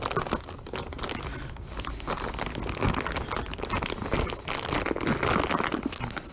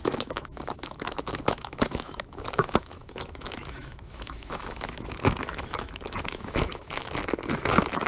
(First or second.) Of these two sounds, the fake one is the second